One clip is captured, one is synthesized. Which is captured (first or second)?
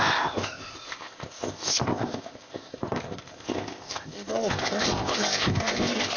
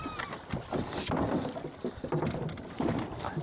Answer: second